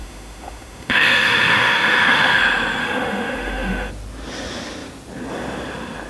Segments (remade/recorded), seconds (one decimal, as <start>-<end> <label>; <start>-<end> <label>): 0.0-2.4 remade; 2.4-2.8 recorded; 2.8-3.9 remade; 3.9-6.1 recorded